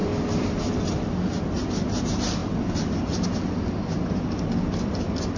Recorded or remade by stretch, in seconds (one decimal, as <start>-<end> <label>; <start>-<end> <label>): 0.0-5.4 recorded